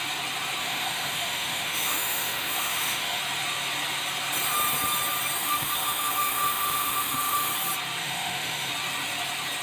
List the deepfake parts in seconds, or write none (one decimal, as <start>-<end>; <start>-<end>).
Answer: 0.6-3.2; 5.4-7.5; 8.0-8.7